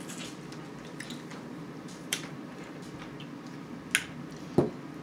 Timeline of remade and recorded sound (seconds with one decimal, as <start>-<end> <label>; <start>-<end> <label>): 0.0-1.3 recorded; 1.3-2.8 remade; 2.8-5.0 recorded